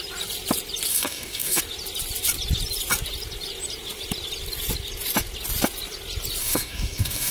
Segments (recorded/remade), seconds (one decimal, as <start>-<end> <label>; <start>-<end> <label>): 0.0-0.9 recorded; 0.9-1.6 remade; 1.6-6.4 recorded; 6.4-7.3 remade